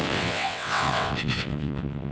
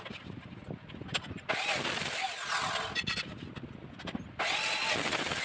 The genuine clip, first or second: second